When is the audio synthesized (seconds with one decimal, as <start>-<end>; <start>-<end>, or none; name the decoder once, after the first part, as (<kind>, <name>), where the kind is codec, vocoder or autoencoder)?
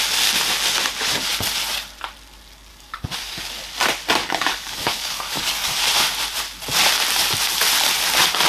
2.7-3.5 (codec, DAC); 4.2-5.8